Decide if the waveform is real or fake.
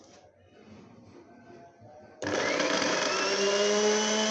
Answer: fake